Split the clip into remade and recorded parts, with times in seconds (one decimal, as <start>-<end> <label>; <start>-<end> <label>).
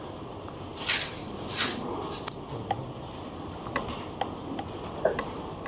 0.0-0.7 remade; 0.7-1.5 recorded; 1.5-2.5 remade; 2.5-3.4 recorded; 3.4-5.7 remade